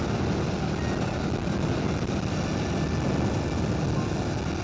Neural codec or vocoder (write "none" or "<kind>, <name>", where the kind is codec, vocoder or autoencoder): none